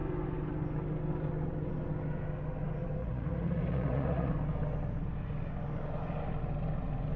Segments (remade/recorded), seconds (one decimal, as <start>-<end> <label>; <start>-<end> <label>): 0.0-3.0 recorded; 3.0-4.3 remade; 4.3-7.2 recorded